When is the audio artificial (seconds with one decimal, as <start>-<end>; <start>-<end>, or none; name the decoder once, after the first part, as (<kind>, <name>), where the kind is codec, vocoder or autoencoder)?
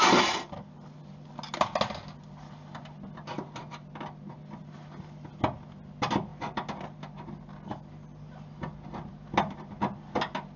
none